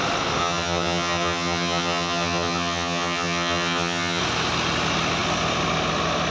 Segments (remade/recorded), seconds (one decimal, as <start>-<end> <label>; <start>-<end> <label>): 0.0-0.4 recorded; 0.4-4.2 remade; 4.2-6.3 recorded